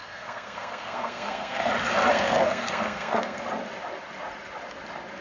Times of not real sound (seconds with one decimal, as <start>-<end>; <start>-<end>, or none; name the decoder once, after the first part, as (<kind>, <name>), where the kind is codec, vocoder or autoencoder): 0.0-1.7 (codec, SNAC); 2.1-3.4